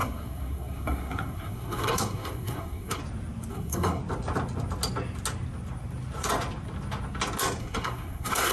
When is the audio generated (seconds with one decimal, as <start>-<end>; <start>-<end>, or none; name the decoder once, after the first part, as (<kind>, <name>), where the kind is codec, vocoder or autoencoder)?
0.0-3.0 (codec, SNAC); 3.5-4.0; 7.6-8.5